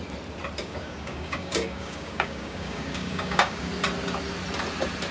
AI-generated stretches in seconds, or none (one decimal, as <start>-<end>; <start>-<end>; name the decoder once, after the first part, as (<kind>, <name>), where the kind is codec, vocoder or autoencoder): 0.6-3.7 (codec, DAC)